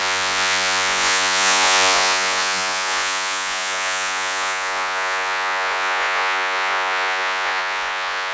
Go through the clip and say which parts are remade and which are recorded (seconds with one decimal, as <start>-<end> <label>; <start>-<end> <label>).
0.0-8.3 remade

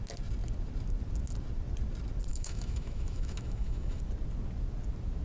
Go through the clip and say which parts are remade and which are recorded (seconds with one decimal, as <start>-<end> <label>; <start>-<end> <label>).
0.0-2.3 recorded; 2.3-4.0 remade; 4.0-5.2 recorded

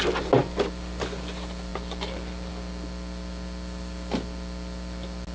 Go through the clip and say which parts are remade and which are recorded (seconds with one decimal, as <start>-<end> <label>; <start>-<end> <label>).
0.0-5.3 recorded

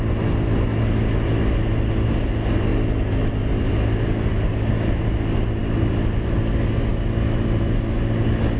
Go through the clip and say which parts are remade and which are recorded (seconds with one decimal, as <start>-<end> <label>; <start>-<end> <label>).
0.0-8.6 recorded

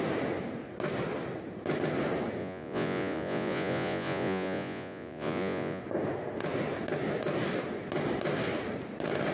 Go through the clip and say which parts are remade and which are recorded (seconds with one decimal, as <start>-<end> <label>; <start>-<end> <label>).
0.0-2.4 recorded; 2.4-5.8 remade; 5.8-9.3 recorded